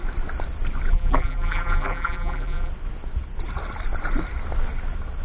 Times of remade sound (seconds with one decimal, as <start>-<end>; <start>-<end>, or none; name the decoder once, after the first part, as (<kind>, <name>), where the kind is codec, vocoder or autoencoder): 0.9-2.7 (vocoder, BigVGAN v2)